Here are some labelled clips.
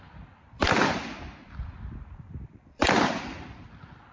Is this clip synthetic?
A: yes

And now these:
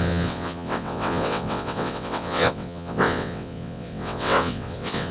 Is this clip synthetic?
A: yes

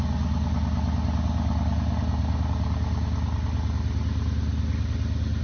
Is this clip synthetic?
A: no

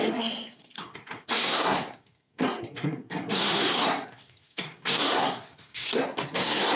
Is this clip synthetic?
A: yes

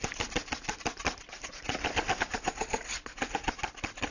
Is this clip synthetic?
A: yes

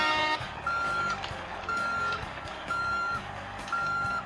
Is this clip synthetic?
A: yes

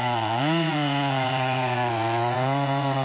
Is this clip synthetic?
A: yes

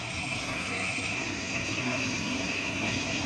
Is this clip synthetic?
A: yes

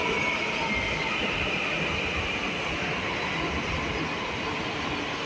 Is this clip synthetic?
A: no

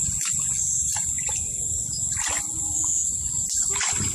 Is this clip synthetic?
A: no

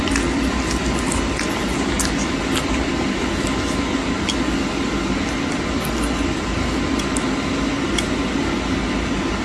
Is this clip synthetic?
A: no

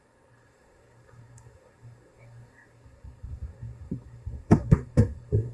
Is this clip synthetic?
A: yes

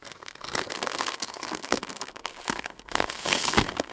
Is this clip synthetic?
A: yes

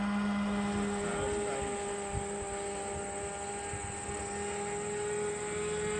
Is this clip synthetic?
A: no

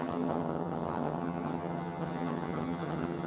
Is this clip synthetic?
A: yes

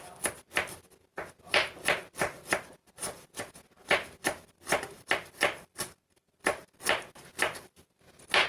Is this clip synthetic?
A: no